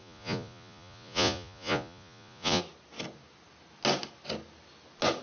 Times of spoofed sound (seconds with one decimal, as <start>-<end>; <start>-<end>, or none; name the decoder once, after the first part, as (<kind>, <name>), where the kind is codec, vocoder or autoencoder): 0.0-2.6 (vocoder, Vocos)